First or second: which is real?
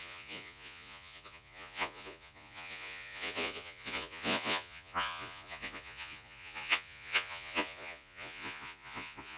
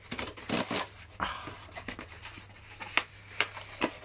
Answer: second